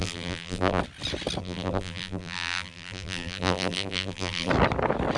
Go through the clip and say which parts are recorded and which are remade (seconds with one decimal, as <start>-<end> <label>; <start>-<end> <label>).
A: 0.0-0.8 remade; 0.8-1.4 recorded; 1.4-4.5 remade; 4.5-5.2 recorded

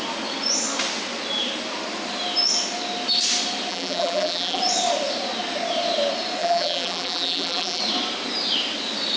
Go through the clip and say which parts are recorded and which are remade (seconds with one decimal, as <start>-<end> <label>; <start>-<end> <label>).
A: 0.0-3.7 recorded; 3.7-4.6 remade; 4.6-6.4 recorded; 6.4-7.8 remade; 7.8-9.2 recorded

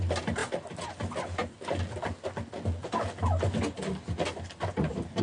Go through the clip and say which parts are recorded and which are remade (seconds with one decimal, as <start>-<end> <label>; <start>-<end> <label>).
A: 0.0-5.2 recorded

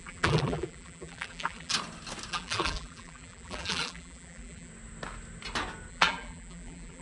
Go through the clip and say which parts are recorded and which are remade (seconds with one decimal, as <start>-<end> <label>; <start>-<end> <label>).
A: 0.0-1.7 remade; 1.7-2.3 recorded; 2.3-4.7 remade; 4.7-5.9 recorded; 5.9-7.0 remade

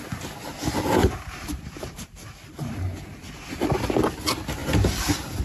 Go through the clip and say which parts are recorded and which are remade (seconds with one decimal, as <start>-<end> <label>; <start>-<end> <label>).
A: 0.0-1.0 recorded; 1.0-2.8 remade; 2.8-5.4 recorded

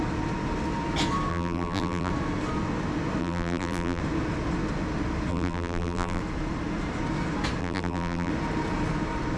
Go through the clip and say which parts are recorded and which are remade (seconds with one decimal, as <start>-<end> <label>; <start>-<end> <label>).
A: 0.0-1.3 recorded; 1.3-2.1 remade; 2.1-3.2 recorded; 3.2-4.0 remade; 4.0-5.3 recorded; 5.3-6.2 remade; 6.2-7.6 recorded; 7.6-8.3 remade; 8.3-9.4 recorded

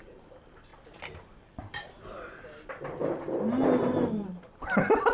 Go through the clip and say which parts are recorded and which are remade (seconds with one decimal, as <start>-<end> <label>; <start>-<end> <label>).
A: 0.0-0.7 remade; 0.7-3.8 recorded; 3.8-5.1 remade